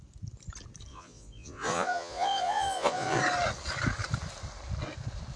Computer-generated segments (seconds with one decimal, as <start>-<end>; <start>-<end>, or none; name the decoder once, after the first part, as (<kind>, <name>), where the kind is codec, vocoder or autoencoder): 0.9-3.2 (vocoder, Vocos)